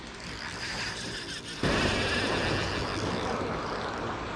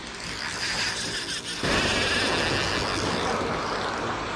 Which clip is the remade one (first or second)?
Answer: first